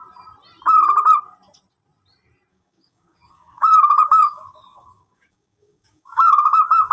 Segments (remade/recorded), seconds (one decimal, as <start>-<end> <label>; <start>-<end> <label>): 0.0-2.5 recorded; 2.5-6.9 remade